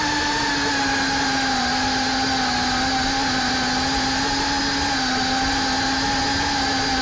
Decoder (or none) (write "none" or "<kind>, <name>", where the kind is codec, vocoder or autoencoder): none